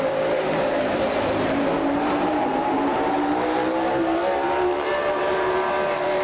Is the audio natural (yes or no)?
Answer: no